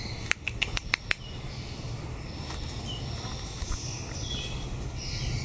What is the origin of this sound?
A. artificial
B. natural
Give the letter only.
B